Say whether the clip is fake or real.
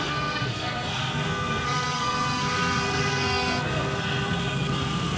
fake